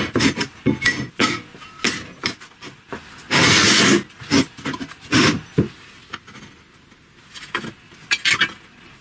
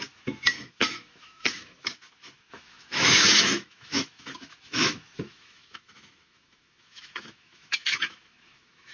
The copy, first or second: second